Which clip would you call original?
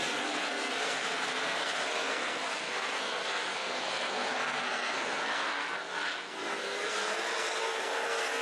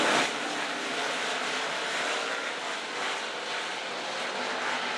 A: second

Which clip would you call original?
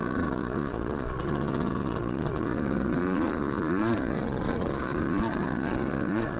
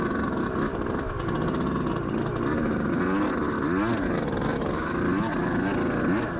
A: second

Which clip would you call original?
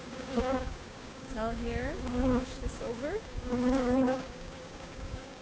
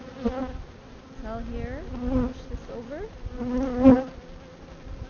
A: second